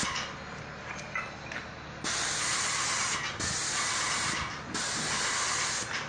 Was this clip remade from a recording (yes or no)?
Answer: no